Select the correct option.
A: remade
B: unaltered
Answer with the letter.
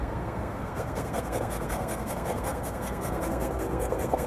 A